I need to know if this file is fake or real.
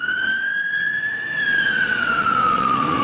fake